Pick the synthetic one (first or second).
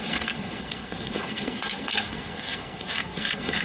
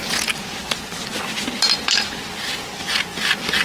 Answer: first